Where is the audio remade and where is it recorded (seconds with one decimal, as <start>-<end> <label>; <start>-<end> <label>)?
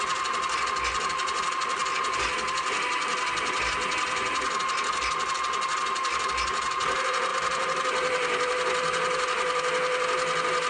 0.0-10.7 recorded